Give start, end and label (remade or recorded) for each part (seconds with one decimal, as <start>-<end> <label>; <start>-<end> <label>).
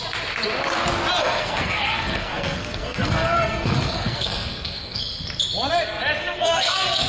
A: 0.0-1.2 recorded; 1.2-5.0 remade; 5.0-6.2 recorded; 6.2-7.1 remade